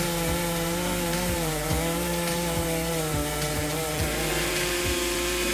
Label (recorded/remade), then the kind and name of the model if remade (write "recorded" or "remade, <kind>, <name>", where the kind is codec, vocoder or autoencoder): remade, vocoder, BigVGAN v2